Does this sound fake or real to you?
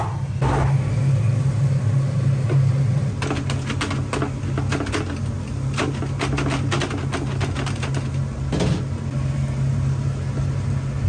real